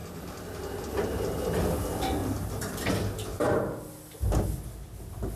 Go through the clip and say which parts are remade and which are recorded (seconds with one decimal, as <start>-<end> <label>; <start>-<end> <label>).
0.0-2.2 recorded; 2.2-2.9 remade; 2.9-3.3 recorded; 3.3-3.8 remade; 3.8-5.4 recorded